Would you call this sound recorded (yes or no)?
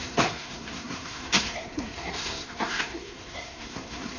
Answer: no